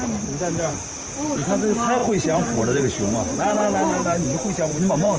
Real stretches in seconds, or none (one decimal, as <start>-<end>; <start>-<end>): 0.0-2.0